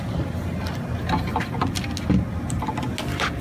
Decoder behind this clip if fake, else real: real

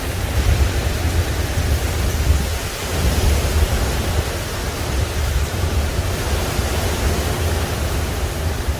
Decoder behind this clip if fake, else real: real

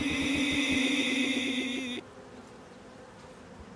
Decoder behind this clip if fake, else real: real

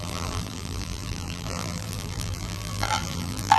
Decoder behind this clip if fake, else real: fake, vocoder, BigVGAN v2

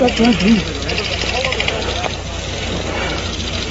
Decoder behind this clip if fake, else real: real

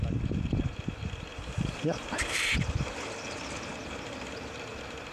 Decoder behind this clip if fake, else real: real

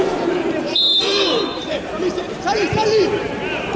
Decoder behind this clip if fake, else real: fake, vocoder, BigVGAN v2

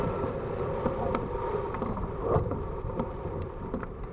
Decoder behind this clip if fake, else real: fake, vocoder, BigVGAN v2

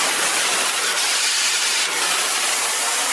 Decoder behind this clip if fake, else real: fake, vocoder, BigVGAN v2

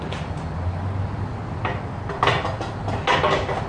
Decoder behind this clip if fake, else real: real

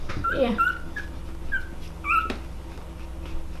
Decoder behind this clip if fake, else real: real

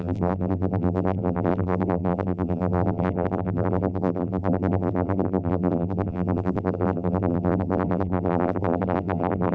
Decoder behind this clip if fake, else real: fake, vocoder, BigVGAN v2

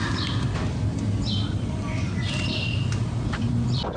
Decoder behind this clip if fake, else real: fake, vocoder, BigVGAN v2